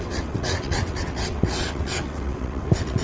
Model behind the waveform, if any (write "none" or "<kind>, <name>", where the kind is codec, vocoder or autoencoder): vocoder, WaveNeXt